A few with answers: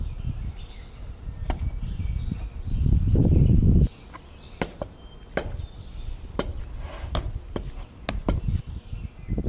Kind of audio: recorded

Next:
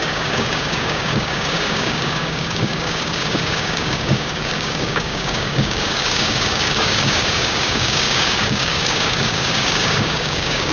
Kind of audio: remade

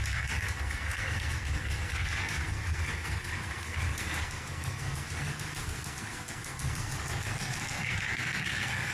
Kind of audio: remade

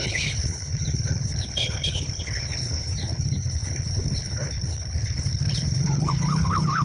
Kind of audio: remade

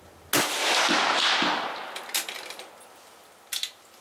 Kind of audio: recorded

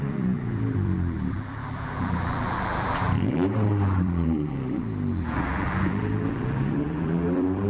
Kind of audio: remade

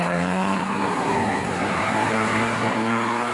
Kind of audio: remade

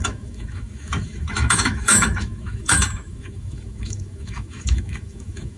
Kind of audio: remade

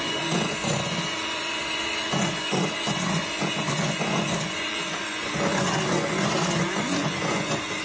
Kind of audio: remade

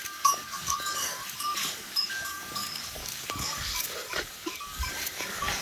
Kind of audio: remade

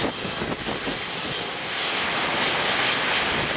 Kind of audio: recorded